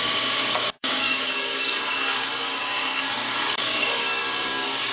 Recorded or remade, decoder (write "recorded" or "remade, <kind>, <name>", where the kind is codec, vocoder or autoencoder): remade, codec, DAC